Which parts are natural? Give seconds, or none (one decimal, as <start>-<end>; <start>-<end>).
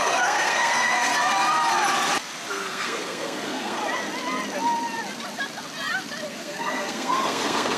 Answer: 1.1-2.5; 3.8-6.3